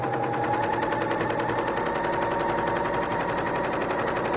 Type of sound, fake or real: real